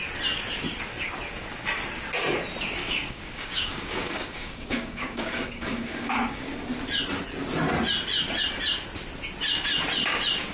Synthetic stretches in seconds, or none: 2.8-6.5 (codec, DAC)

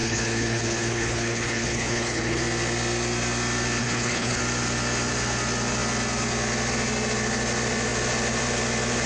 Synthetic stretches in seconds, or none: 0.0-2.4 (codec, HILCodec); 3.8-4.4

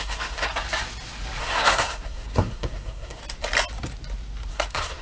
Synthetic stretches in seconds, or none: 0.0-0.5 (codec, SNAC); 1.4-3.2; 4.5-5.0

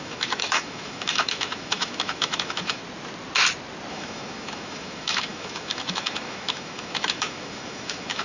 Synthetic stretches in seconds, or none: 0.0-2.8 (autoencoder, DAC-VAE); 3.9-8.2